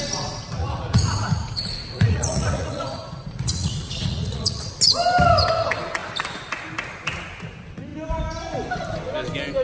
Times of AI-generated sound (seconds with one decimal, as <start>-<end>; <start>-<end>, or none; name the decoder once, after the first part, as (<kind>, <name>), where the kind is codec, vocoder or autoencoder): 0.6-4.7 (vocoder, Vocos)